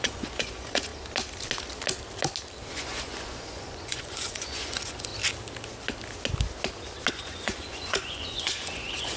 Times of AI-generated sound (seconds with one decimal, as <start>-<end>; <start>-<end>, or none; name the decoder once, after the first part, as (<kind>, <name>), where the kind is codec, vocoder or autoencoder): 0.0-0.9 (vocoder, Vocos); 2.7-5.1; 7.1-9.2